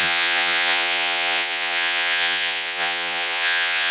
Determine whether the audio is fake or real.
fake